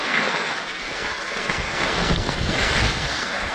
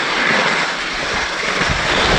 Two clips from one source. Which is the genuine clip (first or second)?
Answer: second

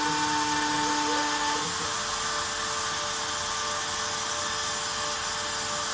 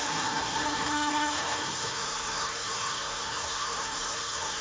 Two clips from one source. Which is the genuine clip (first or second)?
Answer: first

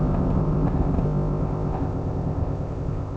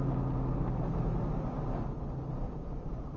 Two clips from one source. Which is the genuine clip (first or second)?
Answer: second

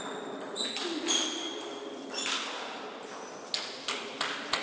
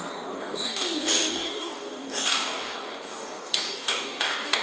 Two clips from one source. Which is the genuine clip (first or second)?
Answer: first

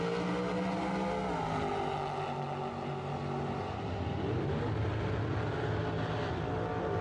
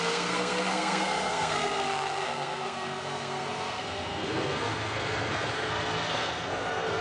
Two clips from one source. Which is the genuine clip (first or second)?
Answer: first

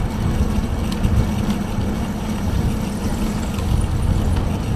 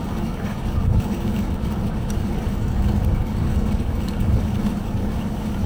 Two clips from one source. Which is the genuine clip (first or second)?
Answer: first